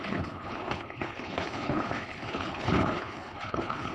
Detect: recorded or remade remade